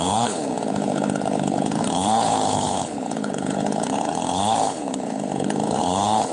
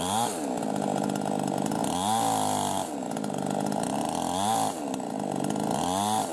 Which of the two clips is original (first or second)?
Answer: second